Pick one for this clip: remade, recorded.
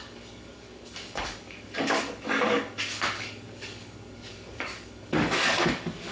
remade